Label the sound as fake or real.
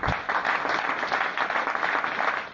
real